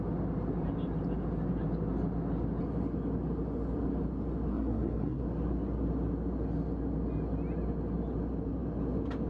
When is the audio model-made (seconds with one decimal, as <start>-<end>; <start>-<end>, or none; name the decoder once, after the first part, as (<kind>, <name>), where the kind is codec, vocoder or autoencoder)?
4.5-5.2 (codec, SNAC)